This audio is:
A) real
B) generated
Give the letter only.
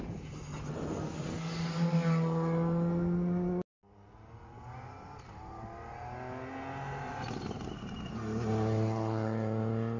A